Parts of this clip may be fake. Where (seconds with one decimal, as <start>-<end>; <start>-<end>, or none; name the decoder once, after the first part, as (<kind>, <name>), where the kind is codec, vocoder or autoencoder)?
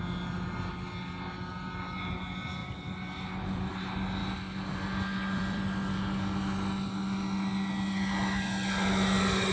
2.6-3.7 (vocoder, BigVGAN v2); 4.2-6.0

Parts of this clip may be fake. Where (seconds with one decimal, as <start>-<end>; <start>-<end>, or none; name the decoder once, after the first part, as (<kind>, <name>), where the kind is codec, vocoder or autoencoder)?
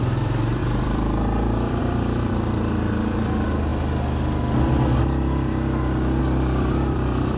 0.0-3.7 (vocoder, BigVGAN v2); 6.2-7.4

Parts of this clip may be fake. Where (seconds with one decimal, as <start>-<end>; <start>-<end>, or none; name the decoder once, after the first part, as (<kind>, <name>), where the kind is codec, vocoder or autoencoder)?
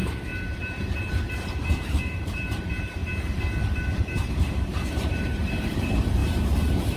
0.0-3.0 (vocoder, BigVGAN v2); 3.9-7.0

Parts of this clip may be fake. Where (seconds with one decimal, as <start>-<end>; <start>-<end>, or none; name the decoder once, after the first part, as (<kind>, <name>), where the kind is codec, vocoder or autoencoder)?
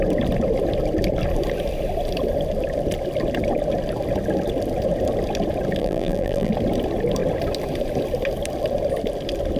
5.8-6.5 (vocoder, BigVGAN v2)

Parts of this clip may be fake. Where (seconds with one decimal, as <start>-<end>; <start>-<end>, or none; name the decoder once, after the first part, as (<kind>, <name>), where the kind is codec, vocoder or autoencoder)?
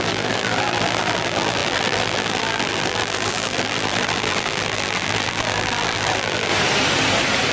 0.0-6.5 (vocoder, BigVGAN v2)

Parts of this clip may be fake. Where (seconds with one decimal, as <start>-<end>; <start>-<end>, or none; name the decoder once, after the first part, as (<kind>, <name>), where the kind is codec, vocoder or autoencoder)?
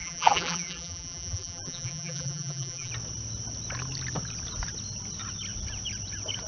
0.0-2.9 (vocoder, BigVGAN v2)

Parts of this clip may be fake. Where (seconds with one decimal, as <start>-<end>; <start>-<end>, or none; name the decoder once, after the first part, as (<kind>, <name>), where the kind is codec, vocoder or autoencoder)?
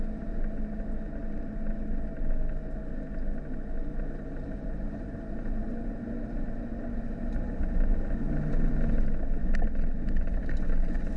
3.9-8.7 (vocoder, BigVGAN v2)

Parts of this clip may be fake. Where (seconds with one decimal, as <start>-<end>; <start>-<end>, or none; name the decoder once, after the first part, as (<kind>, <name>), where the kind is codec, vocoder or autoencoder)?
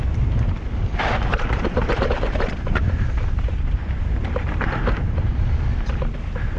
1.3-5.3 (vocoder, BigVGAN v2)